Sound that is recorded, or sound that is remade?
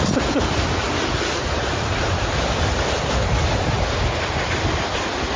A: recorded